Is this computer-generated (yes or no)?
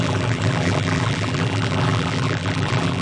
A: yes